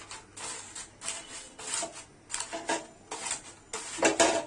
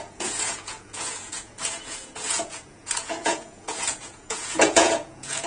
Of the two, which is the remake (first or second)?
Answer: second